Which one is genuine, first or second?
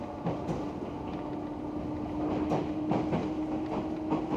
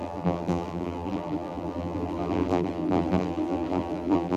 first